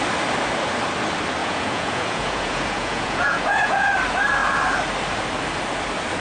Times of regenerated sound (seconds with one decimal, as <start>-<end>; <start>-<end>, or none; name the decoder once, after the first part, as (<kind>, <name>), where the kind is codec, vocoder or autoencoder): 1.4-3.9 (vocoder, Vocos)